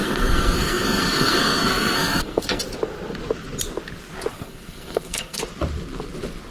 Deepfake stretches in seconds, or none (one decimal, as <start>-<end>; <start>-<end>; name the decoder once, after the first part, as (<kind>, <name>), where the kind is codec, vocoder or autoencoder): 0.0-2.6 (codec, SNAC); 4.3-5.4